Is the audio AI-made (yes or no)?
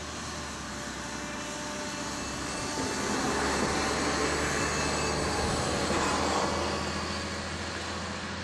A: no